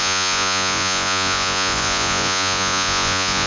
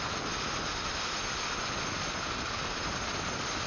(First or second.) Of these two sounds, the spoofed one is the first